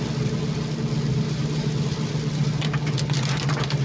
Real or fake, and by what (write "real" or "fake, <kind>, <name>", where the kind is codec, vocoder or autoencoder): real